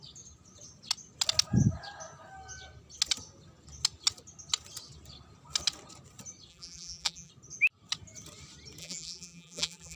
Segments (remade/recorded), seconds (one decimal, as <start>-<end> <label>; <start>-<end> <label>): 0.0-6.5 recorded; 6.5-7.3 remade; 7.3-8.8 recorded; 8.8-10.0 remade